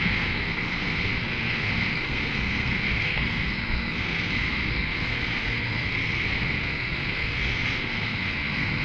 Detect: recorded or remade remade